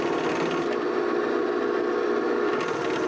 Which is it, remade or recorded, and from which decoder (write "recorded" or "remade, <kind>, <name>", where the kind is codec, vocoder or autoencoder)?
recorded